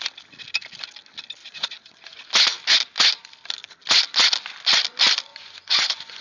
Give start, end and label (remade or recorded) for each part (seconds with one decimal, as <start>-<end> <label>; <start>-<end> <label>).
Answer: 0.0-1.4 recorded; 1.4-2.2 remade; 2.2-5.3 recorded; 5.3-6.2 remade